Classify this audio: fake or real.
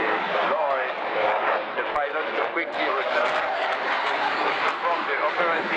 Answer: fake